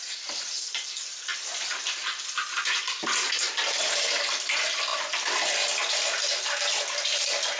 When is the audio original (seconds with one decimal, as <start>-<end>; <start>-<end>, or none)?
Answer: 0.0-7.6